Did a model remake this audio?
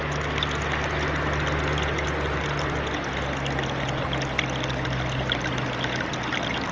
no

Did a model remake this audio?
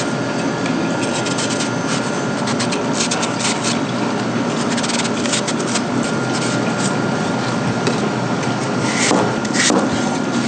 no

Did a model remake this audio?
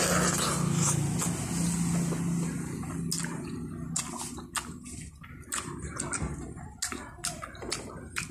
no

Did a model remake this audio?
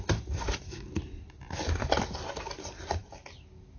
no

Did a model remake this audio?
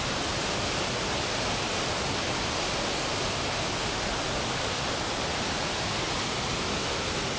no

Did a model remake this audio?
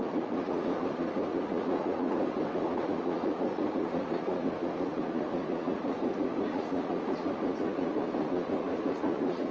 yes